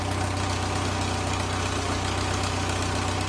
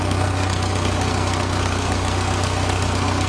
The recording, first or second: first